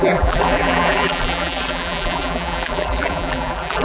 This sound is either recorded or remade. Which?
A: remade